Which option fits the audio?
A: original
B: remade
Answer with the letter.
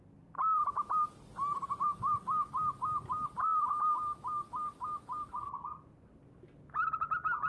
A